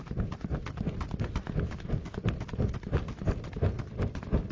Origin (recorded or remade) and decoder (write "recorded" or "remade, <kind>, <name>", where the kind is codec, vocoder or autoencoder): recorded